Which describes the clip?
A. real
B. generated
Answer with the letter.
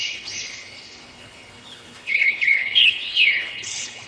B